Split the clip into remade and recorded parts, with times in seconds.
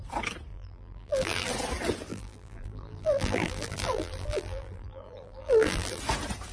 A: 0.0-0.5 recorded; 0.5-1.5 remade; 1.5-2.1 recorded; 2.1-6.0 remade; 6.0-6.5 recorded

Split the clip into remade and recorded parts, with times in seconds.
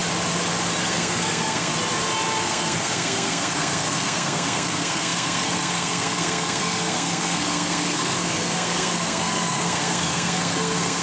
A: 0.0-0.8 recorded; 0.8-1.7 remade; 1.7-2.4 recorded; 2.4-11.0 remade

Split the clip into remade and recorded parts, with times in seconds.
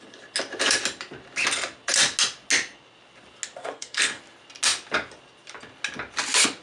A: 0.0-3.6 recorded; 3.6-4.2 remade; 4.2-6.6 recorded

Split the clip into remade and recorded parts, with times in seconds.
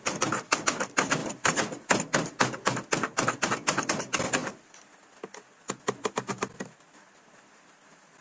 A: 0.0-8.2 recorded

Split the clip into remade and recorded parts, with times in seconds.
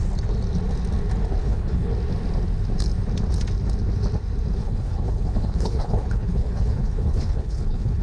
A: 0.0-1.4 recorded; 1.4-1.9 remade; 1.9-4.6 recorded; 4.6-8.0 remade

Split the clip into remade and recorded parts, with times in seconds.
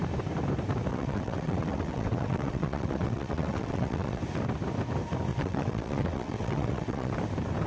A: 0.0-0.9 recorded; 0.9-4.2 remade; 4.2-5.3 recorded; 5.3-7.1 remade; 7.1-7.7 recorded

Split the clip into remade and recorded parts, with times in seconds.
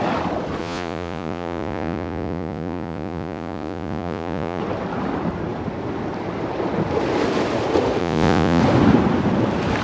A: 0.0-0.6 recorded; 0.6-4.6 remade; 4.6-8.0 recorded; 8.0-8.6 remade; 8.6-9.8 recorded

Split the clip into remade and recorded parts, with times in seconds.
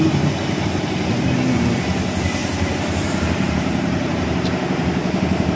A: 0.0-2.4 recorded; 2.4-5.6 remade